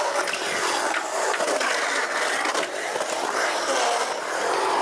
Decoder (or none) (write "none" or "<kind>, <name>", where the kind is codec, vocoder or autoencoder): none